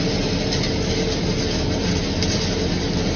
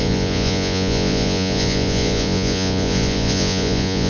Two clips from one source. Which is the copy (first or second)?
second